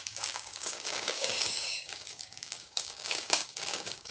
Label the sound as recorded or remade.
remade